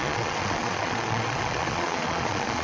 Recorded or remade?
remade